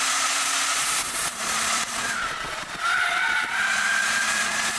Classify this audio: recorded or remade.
remade